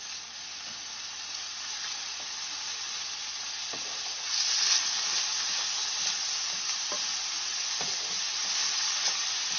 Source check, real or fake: real